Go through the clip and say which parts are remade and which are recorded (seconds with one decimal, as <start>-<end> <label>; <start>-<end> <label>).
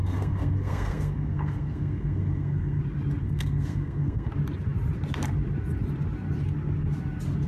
0.0-2.8 remade; 2.8-3.2 recorded; 3.2-4.3 remade; 4.3-7.5 recorded